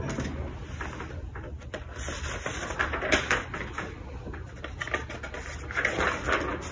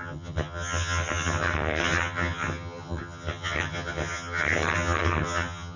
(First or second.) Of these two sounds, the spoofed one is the second